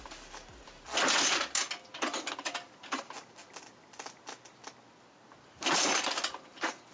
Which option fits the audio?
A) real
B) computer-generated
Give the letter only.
A